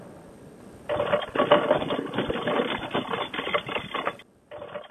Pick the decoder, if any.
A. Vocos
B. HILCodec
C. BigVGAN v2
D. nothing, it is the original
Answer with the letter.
D